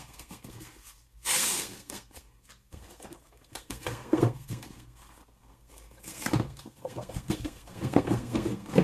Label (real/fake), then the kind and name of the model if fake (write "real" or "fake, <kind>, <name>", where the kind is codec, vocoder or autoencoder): fake, codec, SNAC